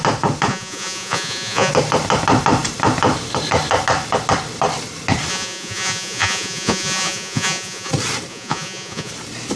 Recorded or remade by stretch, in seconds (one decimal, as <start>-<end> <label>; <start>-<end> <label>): 0.0-0.5 recorded; 0.5-1.7 remade; 1.7-5.3 recorded; 5.3-7.9 remade; 7.9-8.3 recorded; 8.3-9.1 remade; 9.1-9.6 recorded